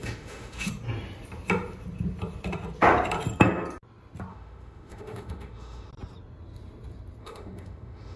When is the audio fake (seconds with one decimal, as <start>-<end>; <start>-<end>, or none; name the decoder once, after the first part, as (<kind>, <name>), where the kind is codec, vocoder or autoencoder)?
0.0-0.7 (autoencoder, DAC-VAE); 4.3-5.9; 7.2-8.2